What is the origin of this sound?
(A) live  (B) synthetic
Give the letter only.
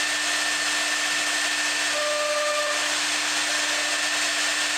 A